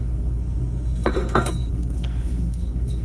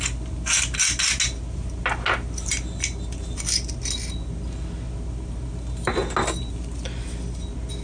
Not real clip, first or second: first